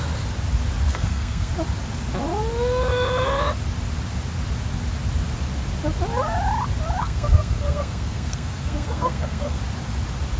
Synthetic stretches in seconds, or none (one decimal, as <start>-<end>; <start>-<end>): 0.9-1.5; 7.0-9.6